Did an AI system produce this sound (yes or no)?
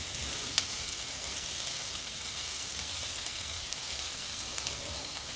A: yes